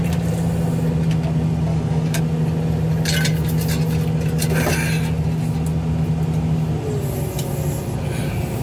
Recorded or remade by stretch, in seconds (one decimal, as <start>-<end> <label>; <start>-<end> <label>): 0.0-1.7 recorded; 1.7-2.2 remade; 2.2-8.6 recorded

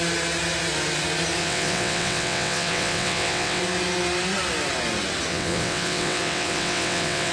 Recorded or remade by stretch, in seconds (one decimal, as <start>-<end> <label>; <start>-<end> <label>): 0.0-1.4 recorded; 1.4-3.6 remade; 3.6-5.3 recorded; 5.3-7.3 remade

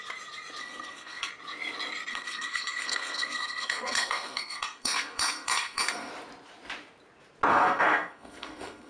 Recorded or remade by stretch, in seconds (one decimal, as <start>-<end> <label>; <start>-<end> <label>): 0.0-0.6 recorded; 0.6-1.3 remade; 1.3-2.1 recorded; 2.1-6.1 remade; 6.1-7.5 recorded; 7.5-8.9 remade

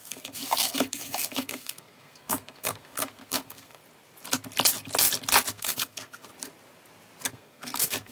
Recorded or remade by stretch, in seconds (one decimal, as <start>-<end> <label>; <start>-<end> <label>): 0.0-3.8 remade; 3.8-5.5 recorded; 5.5-6.3 remade; 6.3-7.3 recorded; 7.3-8.1 remade

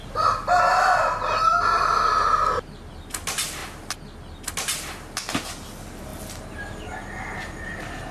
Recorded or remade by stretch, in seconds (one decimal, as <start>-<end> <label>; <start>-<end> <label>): 0.0-8.1 recorded

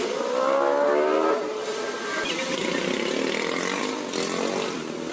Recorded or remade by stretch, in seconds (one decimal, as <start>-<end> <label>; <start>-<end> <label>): 0.0-5.1 recorded